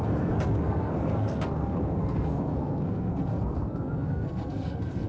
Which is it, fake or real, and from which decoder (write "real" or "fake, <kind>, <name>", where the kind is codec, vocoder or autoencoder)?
fake, codec, SNAC